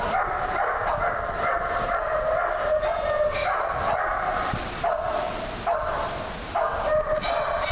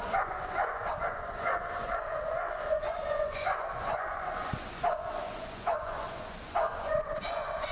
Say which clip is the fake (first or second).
second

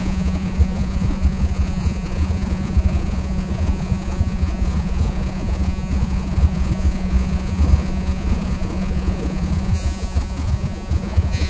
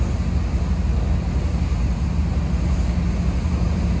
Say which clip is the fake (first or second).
first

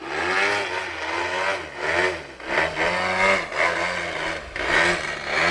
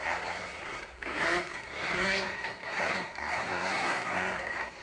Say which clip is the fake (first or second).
second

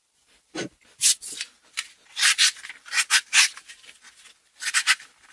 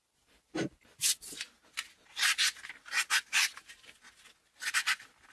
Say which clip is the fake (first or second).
first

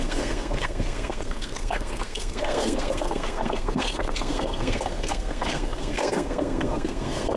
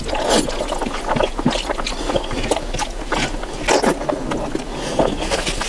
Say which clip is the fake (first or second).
first